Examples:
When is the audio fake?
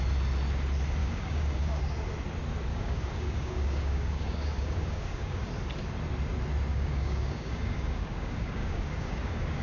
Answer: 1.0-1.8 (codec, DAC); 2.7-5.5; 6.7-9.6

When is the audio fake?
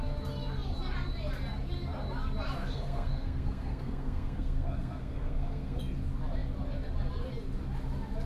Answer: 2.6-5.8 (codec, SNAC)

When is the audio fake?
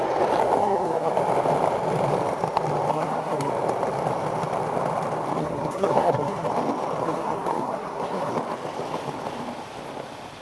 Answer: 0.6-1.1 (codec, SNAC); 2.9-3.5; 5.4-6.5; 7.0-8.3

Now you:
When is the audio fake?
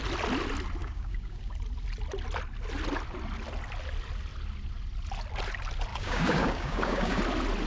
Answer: 0.8-1.5 (codec, DAC); 5.9-7.2